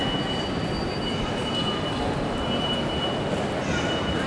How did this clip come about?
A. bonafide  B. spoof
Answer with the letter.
A